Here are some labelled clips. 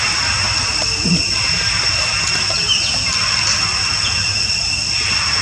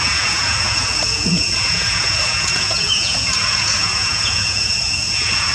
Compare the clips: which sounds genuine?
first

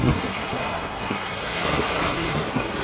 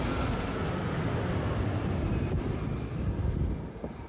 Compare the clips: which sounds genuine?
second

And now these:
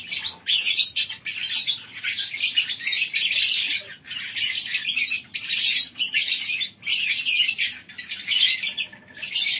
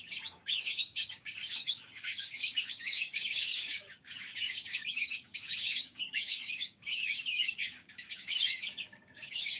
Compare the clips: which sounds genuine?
first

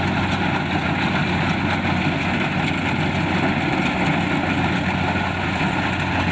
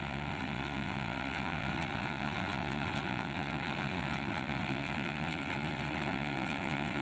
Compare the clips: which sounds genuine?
first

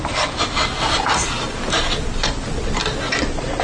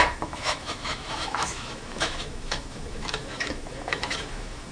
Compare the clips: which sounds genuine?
first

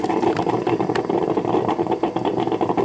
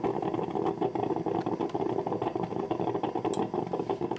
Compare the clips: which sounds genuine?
second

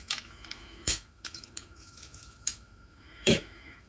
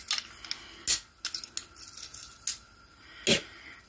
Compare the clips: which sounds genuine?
second